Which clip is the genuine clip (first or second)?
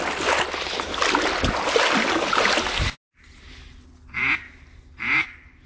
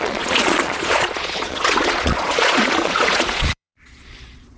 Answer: first